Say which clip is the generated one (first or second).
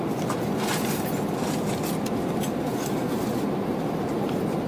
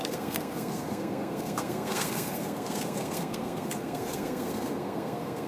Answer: second